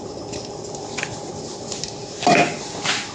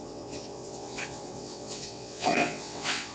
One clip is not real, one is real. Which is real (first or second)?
first